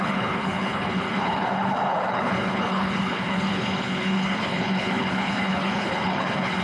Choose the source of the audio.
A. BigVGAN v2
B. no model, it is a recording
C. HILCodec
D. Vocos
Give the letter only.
C